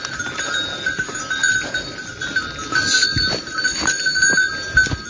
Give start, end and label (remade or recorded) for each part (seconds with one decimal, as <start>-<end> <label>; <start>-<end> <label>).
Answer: 0.0-5.1 recorded